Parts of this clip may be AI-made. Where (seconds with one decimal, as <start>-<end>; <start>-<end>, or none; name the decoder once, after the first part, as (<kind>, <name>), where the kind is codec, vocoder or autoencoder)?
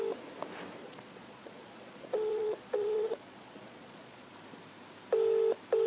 0.8-4.3 (vocoder, Vocos)